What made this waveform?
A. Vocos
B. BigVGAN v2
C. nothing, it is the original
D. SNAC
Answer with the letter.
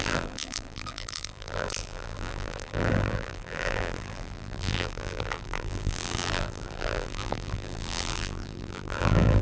B